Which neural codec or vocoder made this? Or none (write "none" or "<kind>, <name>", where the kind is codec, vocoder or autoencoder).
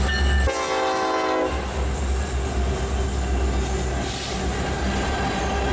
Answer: none